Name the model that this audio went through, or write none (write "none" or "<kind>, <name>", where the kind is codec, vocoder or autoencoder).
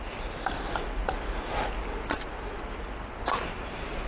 none